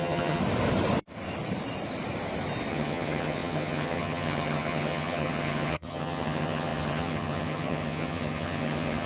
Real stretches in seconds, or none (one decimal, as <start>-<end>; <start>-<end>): 0.4-2.7